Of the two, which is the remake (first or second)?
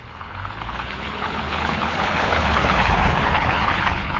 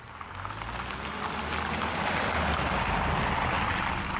first